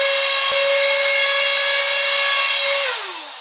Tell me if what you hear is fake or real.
real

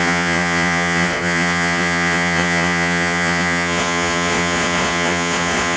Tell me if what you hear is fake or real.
fake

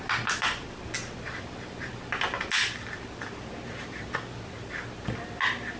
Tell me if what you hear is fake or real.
real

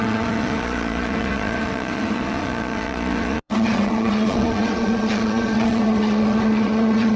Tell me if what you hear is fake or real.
fake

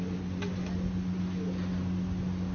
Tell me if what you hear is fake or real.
real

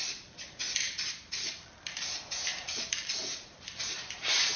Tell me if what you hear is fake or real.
fake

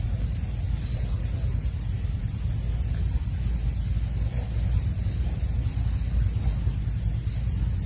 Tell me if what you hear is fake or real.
real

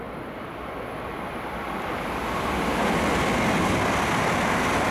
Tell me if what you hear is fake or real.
real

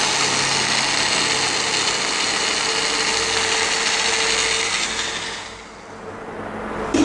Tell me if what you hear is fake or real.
real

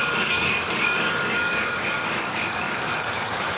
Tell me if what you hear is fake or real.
fake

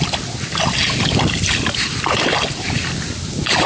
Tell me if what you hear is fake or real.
real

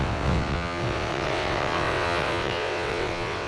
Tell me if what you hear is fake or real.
fake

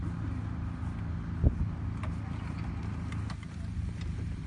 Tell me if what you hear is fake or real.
real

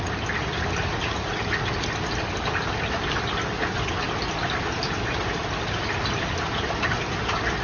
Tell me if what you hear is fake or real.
real